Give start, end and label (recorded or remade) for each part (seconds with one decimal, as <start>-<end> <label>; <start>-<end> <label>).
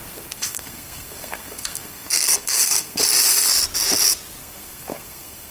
0.0-3.0 remade; 3.0-4.4 recorded; 4.4-5.5 remade